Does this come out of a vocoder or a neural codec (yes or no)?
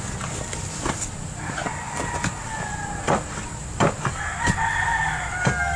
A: no